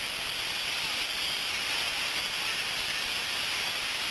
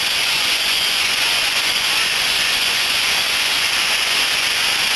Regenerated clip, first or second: second